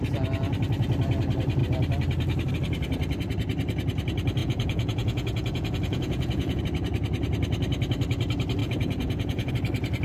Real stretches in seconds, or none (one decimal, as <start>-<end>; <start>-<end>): 0.0-4.4; 6.6-8.6; 9.5-10.0